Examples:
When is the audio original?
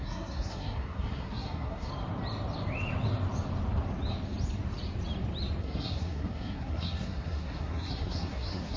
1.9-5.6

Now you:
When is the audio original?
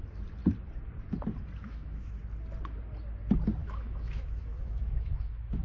0.0-1.6; 2.2-3.6